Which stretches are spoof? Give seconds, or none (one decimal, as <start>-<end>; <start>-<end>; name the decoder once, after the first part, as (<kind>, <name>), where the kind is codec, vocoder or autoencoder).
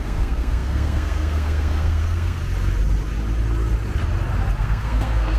0.0-2.4 (codec, SNAC); 4.6-5.4